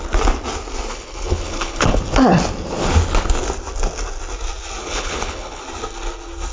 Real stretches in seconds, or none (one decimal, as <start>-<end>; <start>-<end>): 0.0-0.9; 2.0-4.8; 5.6-6.5